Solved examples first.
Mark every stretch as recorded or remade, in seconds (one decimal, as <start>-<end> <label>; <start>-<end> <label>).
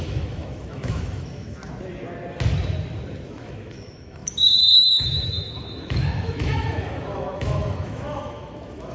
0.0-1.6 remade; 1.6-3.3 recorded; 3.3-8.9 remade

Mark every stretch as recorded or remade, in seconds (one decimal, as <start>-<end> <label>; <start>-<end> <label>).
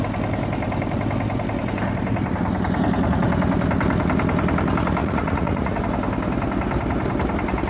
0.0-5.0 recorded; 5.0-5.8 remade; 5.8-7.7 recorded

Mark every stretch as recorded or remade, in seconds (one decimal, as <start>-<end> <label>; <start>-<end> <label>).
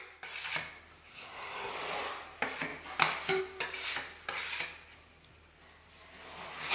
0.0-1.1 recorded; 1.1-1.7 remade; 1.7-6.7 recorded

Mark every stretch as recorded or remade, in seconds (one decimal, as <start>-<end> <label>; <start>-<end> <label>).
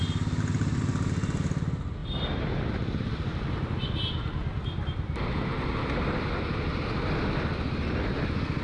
0.0-8.6 recorded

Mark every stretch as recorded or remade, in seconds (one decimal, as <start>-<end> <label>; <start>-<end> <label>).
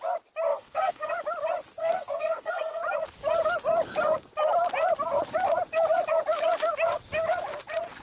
0.0-0.5 recorded; 0.5-1.1 remade; 1.1-1.8 recorded; 1.8-2.8 remade; 2.8-8.0 recorded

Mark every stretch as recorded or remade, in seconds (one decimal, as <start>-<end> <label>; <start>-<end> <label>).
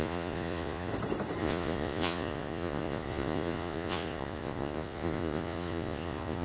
0.0-0.9 remade; 0.9-1.4 recorded; 1.4-6.4 remade